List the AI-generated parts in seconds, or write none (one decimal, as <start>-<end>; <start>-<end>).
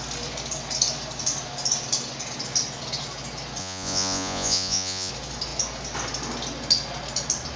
3.6-5.1